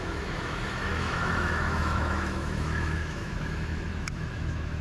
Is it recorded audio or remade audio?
remade